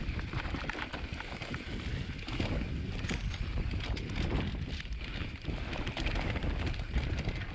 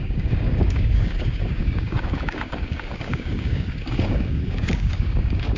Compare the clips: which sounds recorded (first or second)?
first